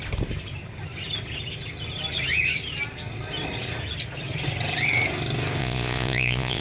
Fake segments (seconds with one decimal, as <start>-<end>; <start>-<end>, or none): 5.6-6.6